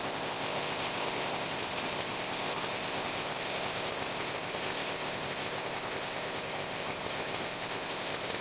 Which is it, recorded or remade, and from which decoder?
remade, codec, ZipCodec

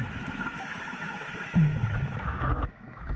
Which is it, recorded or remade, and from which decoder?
remade, autoencoder, DAC-VAE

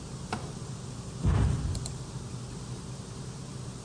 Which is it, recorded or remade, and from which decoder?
recorded